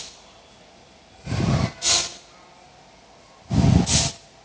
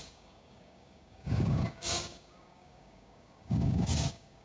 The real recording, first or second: first